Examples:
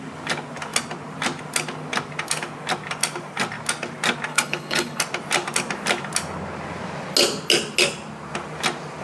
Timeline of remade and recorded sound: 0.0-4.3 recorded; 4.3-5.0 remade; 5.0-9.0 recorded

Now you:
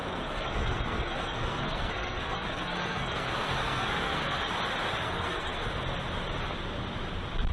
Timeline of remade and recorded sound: 0.0-4.5 remade; 4.5-5.0 recorded; 5.0-5.6 remade; 5.6-7.5 recorded

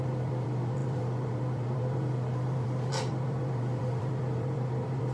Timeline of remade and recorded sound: 0.0-5.1 remade

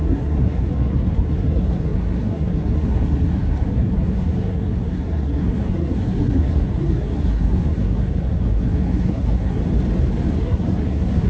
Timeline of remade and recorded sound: 0.0-9.6 remade; 9.6-10.4 recorded; 10.4-11.3 remade